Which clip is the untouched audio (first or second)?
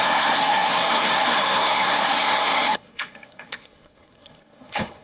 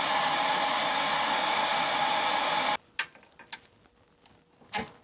second